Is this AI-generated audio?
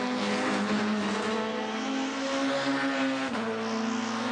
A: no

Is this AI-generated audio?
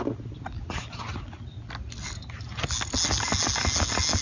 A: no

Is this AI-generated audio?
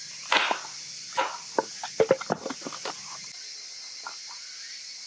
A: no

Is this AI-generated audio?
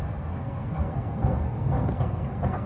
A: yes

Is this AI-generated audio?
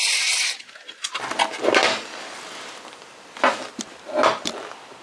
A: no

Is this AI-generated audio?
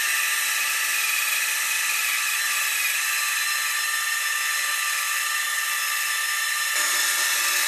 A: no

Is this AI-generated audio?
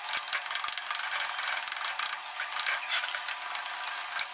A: no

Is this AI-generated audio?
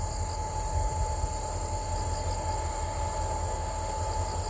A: no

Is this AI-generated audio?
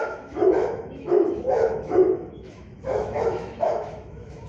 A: yes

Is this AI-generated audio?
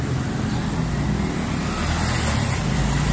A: no